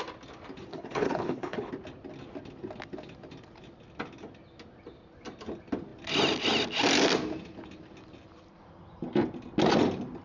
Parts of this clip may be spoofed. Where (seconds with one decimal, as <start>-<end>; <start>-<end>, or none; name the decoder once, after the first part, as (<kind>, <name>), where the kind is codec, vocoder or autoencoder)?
0.7-1.7 (codec, HILCodec)